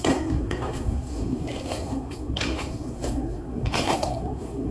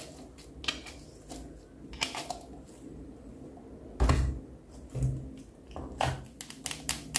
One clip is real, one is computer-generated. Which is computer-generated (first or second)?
first